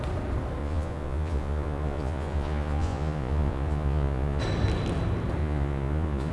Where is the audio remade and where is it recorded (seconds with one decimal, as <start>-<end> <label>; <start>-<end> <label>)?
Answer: 0.0-0.6 recorded; 0.6-4.4 remade; 4.4-5.4 recorded; 5.4-6.3 remade